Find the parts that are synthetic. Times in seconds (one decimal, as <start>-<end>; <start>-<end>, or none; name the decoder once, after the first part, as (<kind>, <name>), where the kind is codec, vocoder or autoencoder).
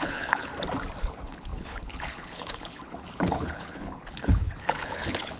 0.0-0.5 (codec, HILCodec); 1.0-5.4